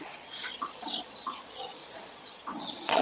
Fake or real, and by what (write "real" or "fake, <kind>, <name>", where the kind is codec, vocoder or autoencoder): fake, vocoder, Vocos